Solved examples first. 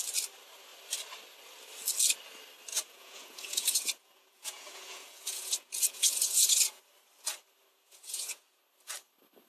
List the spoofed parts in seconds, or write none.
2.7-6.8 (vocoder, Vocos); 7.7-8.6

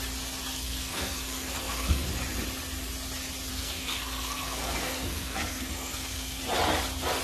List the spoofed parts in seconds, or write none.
0.5-2.1 (codec, SNAC); 3.5-6.4

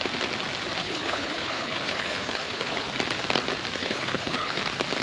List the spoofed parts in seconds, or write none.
0.8-2.9 (codec, HILCodec); 3.8-4.6